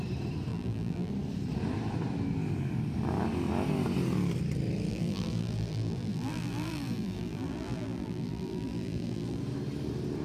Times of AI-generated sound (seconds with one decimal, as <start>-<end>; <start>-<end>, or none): 0.5-1.1; 4.9-9.4